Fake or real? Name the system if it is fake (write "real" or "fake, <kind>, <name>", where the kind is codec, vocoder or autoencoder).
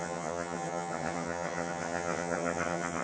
fake, vocoder, HiFi-GAN